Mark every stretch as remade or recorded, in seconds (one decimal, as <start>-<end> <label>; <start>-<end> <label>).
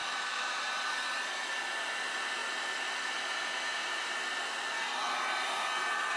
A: 0.0-0.6 remade; 0.6-6.2 recorded